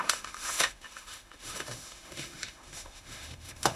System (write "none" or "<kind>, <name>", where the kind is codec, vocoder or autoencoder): autoencoder, DAC-VAE